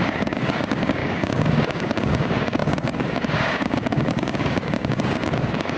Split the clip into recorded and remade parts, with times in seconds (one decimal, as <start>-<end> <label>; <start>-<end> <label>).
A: 0.0-5.8 remade